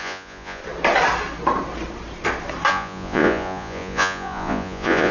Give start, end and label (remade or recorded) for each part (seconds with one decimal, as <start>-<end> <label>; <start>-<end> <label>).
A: 0.0-0.6 remade; 0.6-2.7 recorded; 2.7-5.1 remade